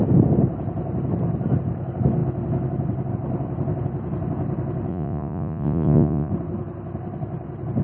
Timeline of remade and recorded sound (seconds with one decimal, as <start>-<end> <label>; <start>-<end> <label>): 0.0-4.9 recorded; 4.9-6.3 remade; 6.3-7.8 recorded